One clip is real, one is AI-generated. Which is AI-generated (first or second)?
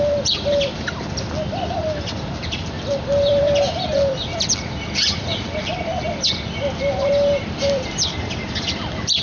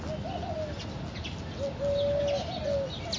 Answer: first